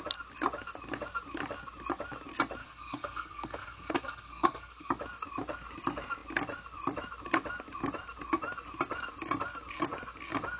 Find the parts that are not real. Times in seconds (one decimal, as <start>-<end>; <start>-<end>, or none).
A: 2.6-4.9